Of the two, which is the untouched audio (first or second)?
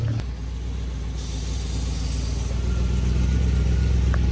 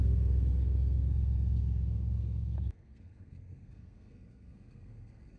first